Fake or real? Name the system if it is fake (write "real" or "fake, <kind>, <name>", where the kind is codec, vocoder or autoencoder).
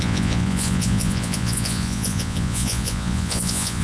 fake, vocoder, Vocos